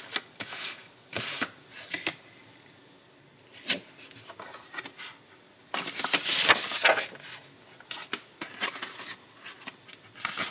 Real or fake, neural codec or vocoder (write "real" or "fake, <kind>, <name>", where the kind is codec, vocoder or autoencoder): real